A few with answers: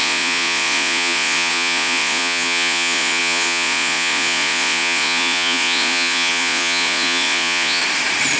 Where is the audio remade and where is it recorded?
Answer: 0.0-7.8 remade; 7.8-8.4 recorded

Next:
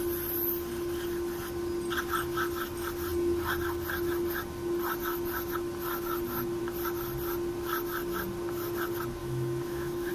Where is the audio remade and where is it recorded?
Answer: 0.0-9.2 recorded; 9.2-10.1 remade

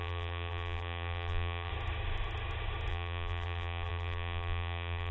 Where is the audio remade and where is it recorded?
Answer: 0.0-1.7 remade; 1.7-2.9 recorded; 2.9-5.1 remade

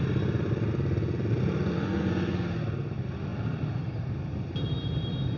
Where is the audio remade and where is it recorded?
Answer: 0.0-1.6 recorded; 1.6-2.4 remade; 2.4-5.4 recorded

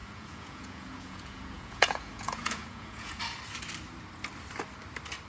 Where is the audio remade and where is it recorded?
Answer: 0.0-3.2 remade; 3.2-5.3 recorded

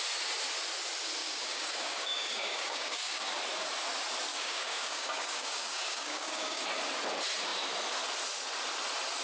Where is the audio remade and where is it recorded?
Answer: 0.0-1.2 recorded; 1.2-3.3 remade; 3.3-4.3 recorded; 4.3-6.6 remade; 6.6-9.2 recorded

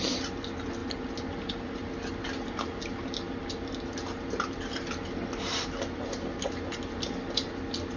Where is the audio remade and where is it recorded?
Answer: 0.0-8.0 recorded